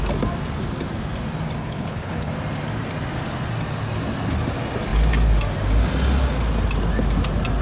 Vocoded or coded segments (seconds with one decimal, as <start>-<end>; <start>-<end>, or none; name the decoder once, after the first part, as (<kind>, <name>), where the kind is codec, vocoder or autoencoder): 1.6-2.3 (codec, HILCodec)